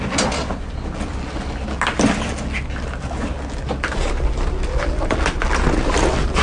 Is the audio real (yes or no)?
yes